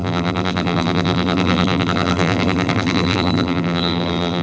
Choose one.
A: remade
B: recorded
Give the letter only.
A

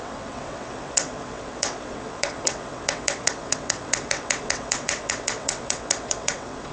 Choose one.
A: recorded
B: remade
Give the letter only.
B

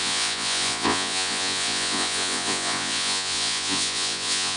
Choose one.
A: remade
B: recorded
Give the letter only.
A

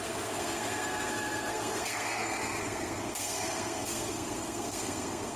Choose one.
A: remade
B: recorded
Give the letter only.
A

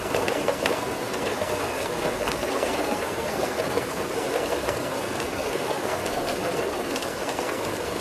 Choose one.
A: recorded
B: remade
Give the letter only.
B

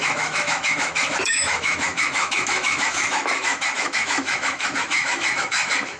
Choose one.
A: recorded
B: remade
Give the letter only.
B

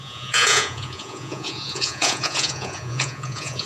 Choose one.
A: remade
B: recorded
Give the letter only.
A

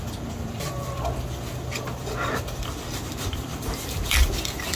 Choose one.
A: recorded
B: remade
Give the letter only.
B